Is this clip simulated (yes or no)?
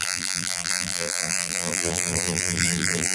yes